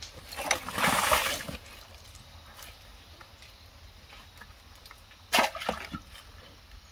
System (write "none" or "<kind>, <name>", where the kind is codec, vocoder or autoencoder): none